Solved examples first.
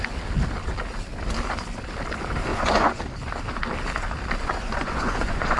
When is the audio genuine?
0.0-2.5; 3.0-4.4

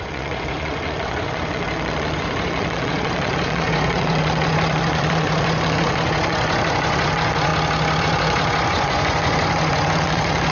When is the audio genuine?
7.5-8.0

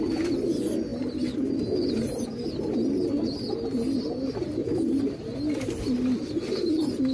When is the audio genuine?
0.0-7.1

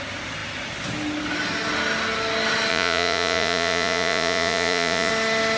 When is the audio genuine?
0.0-2.7; 5.1-5.6

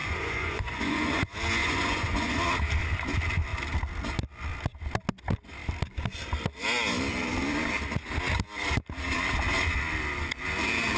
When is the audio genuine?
1.2-1.6; 2.4-11.0

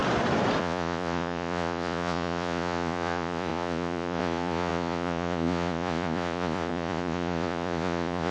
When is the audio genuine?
0.0-0.6